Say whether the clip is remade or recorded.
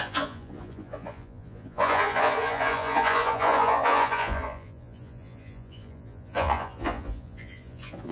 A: remade